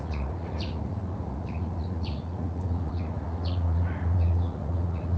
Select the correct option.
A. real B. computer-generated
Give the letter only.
B